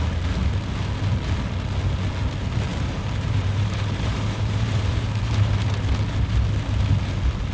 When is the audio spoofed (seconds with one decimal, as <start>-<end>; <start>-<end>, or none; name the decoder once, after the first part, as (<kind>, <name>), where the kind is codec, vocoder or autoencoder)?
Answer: 2.7-5.9 (vocoder, BigVGAN v2)